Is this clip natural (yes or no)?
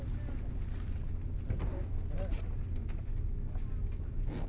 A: yes